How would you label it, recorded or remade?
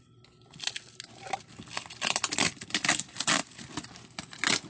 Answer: recorded